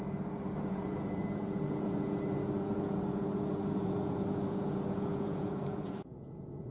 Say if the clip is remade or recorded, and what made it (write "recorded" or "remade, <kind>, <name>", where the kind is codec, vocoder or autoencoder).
remade, vocoder, Vocos